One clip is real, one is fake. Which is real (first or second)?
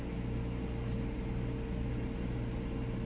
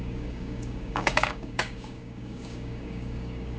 first